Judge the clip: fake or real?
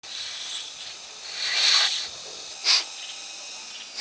real